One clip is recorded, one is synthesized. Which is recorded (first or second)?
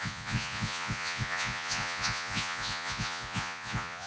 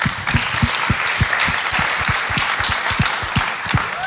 second